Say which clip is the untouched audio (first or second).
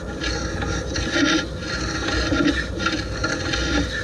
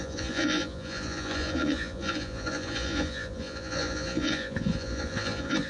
first